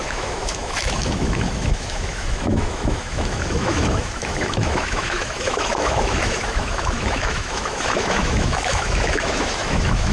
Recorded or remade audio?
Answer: remade